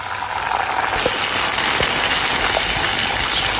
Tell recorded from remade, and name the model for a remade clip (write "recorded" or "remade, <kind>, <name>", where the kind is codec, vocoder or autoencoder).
recorded